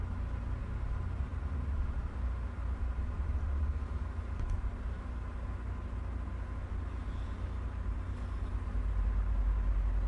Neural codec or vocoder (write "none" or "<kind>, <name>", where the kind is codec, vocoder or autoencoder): none